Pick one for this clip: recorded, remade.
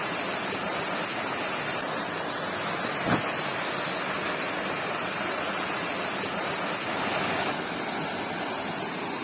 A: recorded